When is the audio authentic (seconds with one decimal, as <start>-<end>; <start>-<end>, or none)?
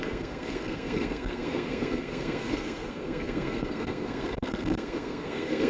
none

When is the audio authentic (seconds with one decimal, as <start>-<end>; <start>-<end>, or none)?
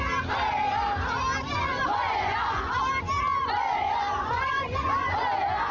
0.0-1.6; 2.7-3.4; 5.2-5.7